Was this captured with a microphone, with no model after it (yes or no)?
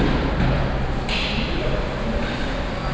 yes